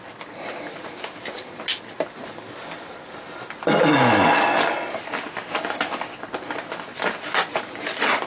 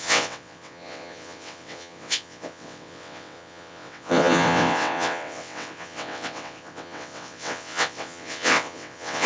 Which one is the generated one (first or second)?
second